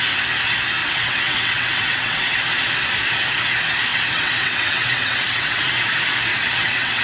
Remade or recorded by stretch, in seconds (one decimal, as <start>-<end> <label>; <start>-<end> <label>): 0.0-0.8 recorded; 0.8-2.4 remade; 2.4-3.9 recorded; 3.9-5.7 remade; 5.7-6.3 recorded; 6.3-7.0 remade